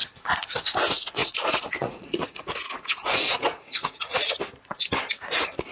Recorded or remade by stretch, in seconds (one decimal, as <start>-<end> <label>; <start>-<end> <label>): 0.0-1.2 recorded; 1.2-4.4 remade; 4.4-5.7 recorded